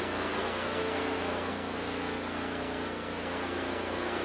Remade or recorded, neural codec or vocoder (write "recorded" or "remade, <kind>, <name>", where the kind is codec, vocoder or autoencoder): remade, codec, SNAC